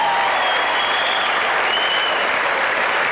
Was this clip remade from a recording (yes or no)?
no